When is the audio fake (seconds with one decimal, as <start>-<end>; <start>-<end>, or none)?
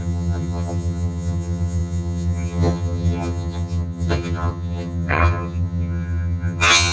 0.0-6.9